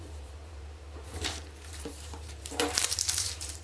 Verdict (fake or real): fake